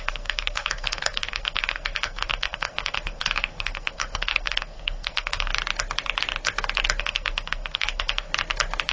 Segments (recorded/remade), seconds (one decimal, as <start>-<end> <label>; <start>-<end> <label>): 0.0-5.5 remade; 5.5-7.0 recorded; 7.0-8.3 remade; 8.3-8.9 recorded